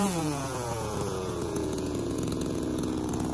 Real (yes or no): no